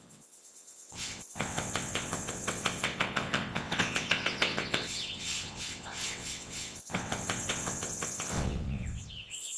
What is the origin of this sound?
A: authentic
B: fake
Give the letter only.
B